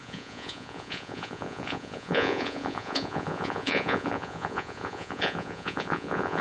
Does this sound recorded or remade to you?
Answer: remade